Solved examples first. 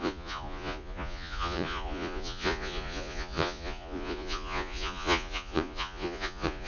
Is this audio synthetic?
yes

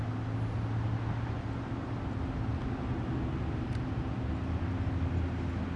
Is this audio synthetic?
no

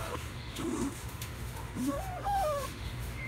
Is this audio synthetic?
yes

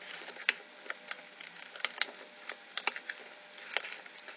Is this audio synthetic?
no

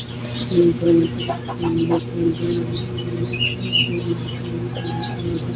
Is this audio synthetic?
no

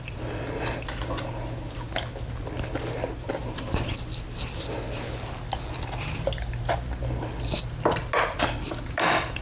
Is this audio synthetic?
no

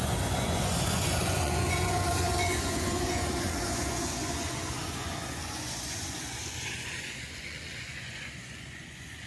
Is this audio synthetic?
yes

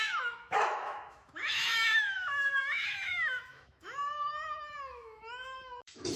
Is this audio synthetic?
yes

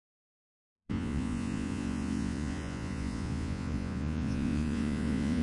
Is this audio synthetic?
yes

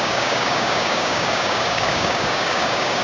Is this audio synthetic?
yes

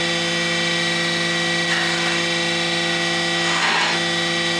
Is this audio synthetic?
no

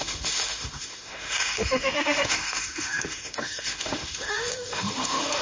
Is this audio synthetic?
yes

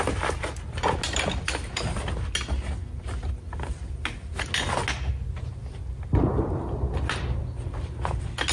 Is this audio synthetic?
no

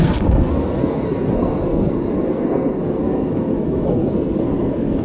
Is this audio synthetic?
yes